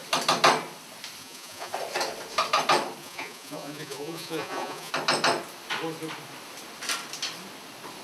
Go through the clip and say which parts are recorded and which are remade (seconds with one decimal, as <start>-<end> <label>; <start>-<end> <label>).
0.0-1.2 recorded; 1.2-1.7 remade; 1.7-3.0 recorded; 3.0-4.9 remade; 4.9-8.0 recorded